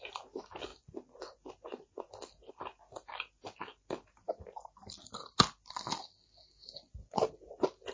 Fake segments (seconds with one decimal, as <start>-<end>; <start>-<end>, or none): none